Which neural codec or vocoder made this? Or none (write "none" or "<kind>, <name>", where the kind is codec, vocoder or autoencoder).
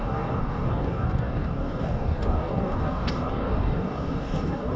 codec, DAC